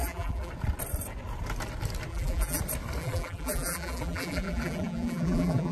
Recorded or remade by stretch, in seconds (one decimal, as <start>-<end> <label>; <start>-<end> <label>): 0.0-0.5 remade; 0.5-2.1 recorded; 2.1-2.6 remade; 2.6-3.0 recorded; 3.0-5.7 remade